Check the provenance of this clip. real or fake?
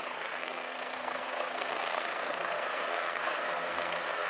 fake